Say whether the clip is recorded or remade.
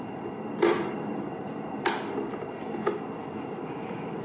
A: recorded